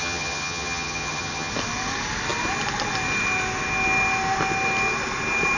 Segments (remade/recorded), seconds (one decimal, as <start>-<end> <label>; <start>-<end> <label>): 0.0-1.5 remade; 1.5-5.6 recorded